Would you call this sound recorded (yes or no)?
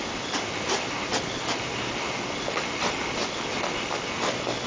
yes